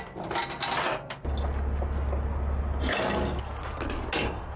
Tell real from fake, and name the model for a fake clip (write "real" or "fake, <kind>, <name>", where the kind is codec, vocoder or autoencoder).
real